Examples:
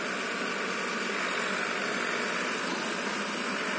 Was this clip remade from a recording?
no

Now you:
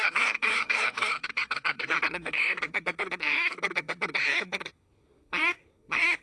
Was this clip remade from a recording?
yes